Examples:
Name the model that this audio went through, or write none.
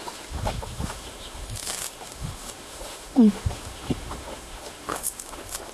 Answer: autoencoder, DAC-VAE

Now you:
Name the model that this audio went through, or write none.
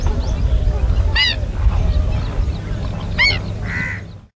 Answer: none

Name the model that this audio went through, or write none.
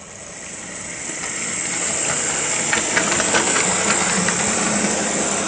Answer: none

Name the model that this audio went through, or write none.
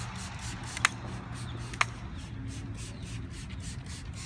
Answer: none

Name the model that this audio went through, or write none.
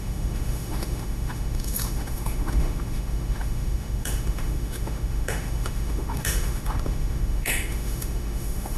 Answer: autoencoder, DAC-VAE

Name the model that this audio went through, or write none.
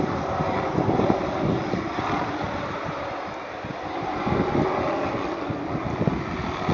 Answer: none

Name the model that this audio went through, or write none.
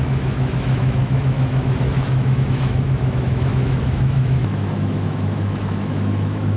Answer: autoencoder, DAC-VAE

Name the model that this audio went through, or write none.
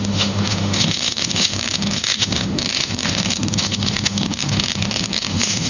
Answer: autoencoder, DAC-VAE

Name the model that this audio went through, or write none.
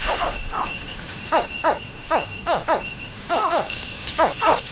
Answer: autoencoder, DAC-VAE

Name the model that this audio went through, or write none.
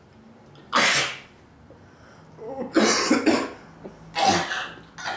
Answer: none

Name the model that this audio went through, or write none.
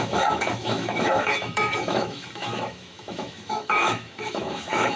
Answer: autoencoder, DAC-VAE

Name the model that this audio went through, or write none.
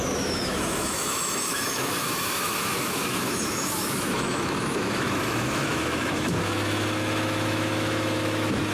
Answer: autoencoder, DAC-VAE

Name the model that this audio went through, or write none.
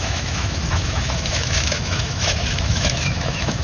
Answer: autoencoder, DAC-VAE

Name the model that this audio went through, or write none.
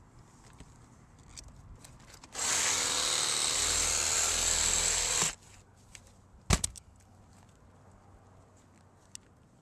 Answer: none